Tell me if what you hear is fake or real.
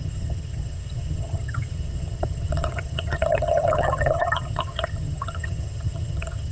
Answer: fake